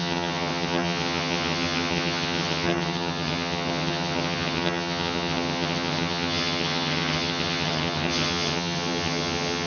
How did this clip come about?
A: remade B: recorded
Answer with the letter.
A